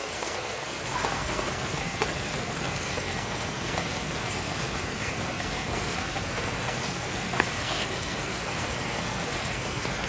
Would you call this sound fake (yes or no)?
yes